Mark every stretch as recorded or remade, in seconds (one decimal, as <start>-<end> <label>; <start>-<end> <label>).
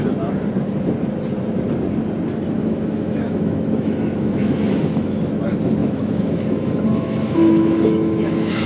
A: 0.0-2.6 recorded; 2.6-5.2 remade; 5.2-5.8 recorded; 5.8-8.7 remade